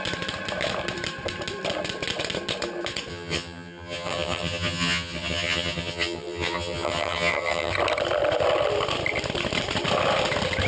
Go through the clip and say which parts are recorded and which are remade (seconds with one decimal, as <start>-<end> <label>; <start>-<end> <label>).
0.0-3.1 recorded; 3.1-7.7 remade; 7.7-10.7 recorded